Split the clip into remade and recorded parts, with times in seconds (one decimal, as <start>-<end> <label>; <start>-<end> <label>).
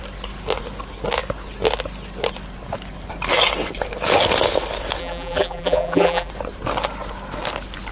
0.0-5.0 recorded; 5.0-6.3 remade; 6.3-7.9 recorded